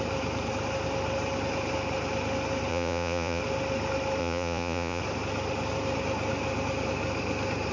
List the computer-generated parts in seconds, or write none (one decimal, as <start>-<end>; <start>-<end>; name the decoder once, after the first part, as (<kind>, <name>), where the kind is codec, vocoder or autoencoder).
2.7-3.4 (vocoder, Vocos); 4.2-5.0